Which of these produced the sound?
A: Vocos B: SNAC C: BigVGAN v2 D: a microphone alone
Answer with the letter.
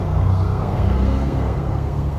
B